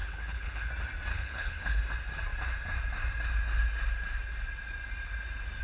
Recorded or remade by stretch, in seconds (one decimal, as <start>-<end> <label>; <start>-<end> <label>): 0.0-0.7 remade; 0.7-1.1 recorded; 1.1-1.8 remade; 1.8-5.6 recorded